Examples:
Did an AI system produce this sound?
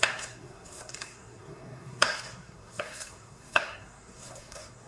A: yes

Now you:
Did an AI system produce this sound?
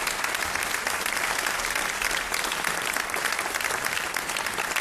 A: no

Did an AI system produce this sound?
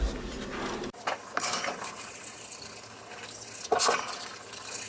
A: no